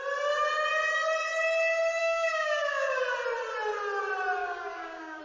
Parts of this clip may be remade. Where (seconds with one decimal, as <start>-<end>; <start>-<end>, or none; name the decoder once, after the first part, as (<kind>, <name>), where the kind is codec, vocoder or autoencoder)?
2.0-3.0 (codec, DAC); 4.4-5.2